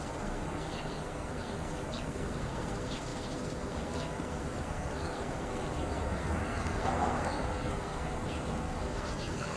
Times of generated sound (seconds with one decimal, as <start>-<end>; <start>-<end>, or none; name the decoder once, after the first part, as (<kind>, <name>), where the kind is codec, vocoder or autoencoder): 0.0-9.6 (codec, SNAC)